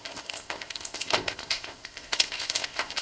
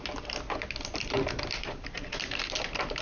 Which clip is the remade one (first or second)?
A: first